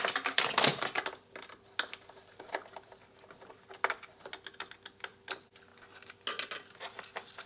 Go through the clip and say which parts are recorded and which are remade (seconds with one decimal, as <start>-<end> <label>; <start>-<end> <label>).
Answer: 0.0-7.5 recorded